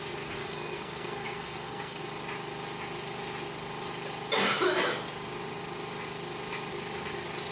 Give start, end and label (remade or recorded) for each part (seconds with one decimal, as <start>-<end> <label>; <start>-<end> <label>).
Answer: 0.0-0.4 recorded; 0.4-2.0 remade; 2.0-7.5 recorded